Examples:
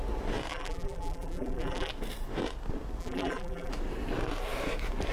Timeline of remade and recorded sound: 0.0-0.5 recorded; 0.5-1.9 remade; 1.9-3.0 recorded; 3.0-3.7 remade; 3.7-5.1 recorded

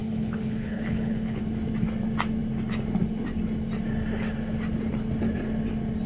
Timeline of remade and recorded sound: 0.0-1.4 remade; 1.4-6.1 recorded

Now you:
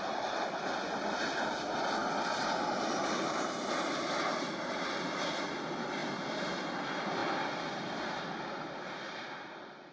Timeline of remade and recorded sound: 0.0-9.9 recorded

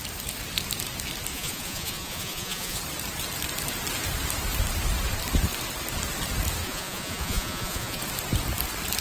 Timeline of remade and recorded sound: 0.0-1.3 recorded; 1.3-2.8 remade; 2.8-6.6 recorded; 6.6-8.0 remade; 8.0-9.0 recorded

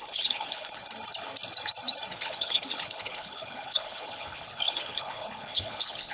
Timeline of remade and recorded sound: 0.0-0.8 remade; 0.8-2.1 recorded; 2.1-6.1 remade

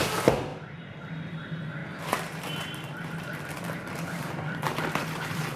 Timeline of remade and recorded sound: 0.0-0.5 remade; 0.5-1.1 recorded; 1.1-5.6 remade

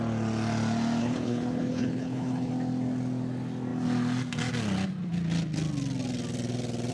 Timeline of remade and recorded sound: 0.0-1.0 recorded; 1.0-2.5 remade; 2.5-6.9 recorded

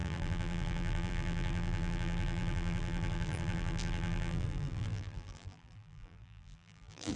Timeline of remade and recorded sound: 0.0-7.2 remade